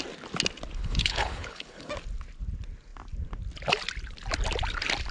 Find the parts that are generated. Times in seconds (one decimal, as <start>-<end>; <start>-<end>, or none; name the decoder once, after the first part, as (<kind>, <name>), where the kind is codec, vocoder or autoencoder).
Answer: 0.8-1.9 (codec, HILCodec)